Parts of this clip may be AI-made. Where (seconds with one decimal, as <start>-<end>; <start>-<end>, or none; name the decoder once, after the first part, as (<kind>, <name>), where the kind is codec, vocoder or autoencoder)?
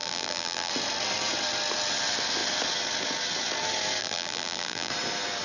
0.0-0.7 (vocoder, BigVGAN v2); 4.0-4.9